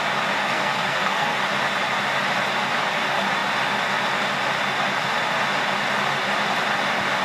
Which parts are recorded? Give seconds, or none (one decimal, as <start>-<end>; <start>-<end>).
0.0-0.4; 1.4-7.2